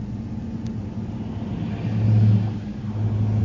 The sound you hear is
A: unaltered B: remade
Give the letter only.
A